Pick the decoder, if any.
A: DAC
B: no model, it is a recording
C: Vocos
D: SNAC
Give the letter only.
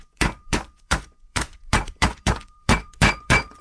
C